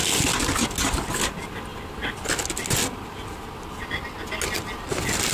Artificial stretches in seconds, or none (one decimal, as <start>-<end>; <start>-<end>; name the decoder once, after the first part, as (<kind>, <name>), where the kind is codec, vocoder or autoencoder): none

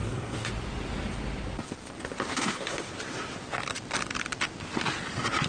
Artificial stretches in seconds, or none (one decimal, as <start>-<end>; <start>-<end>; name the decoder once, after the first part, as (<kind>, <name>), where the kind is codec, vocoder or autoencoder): 0.0-0.5 (codec, DAC); 2.3-2.9

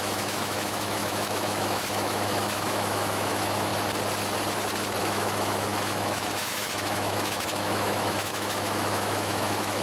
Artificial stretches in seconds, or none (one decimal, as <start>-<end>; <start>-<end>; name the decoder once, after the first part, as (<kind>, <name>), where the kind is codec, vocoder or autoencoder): 0.0-3.7 (autoencoder, DAC-VAE); 5.0-9.8

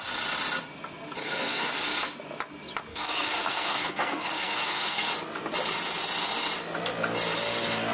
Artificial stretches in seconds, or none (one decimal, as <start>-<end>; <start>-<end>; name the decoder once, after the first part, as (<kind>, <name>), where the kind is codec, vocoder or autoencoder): 1.2-1.7 (codec, SNAC); 2.9-5.1